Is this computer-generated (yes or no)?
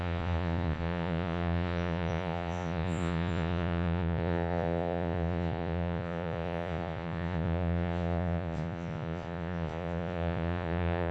yes